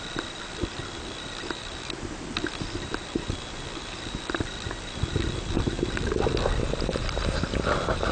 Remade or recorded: recorded